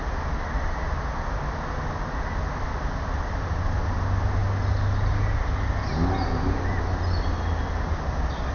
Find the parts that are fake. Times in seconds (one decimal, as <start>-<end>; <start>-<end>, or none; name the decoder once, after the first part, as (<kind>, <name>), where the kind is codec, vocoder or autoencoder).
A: none